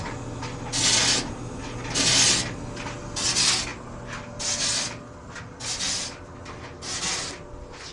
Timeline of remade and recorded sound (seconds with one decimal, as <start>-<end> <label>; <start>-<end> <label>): 0.0-7.9 recorded